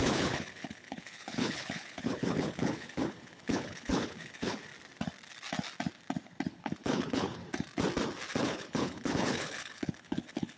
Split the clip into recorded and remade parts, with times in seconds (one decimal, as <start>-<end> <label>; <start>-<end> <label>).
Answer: 0.0-4.7 remade; 4.7-6.5 recorded; 6.5-7.4 remade; 7.4-8.4 recorded; 8.4-10.6 remade